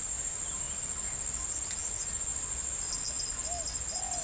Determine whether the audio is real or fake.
real